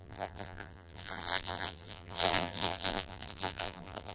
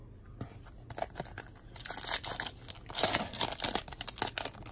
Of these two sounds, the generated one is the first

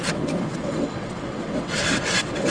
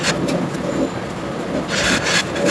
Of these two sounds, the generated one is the first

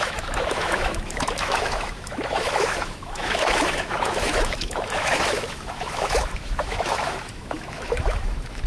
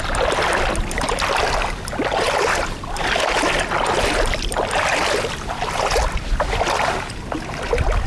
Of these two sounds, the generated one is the first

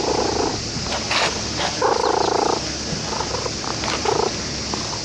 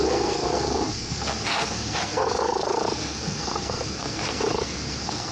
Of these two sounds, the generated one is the second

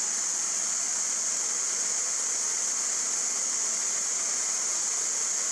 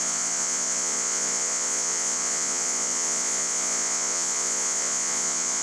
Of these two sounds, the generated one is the second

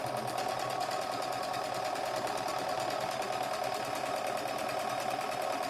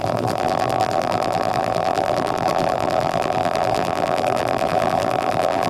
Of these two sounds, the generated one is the second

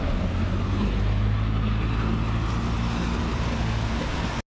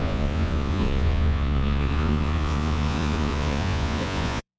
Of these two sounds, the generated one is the second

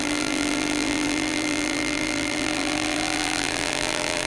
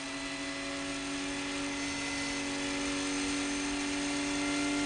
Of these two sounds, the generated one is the first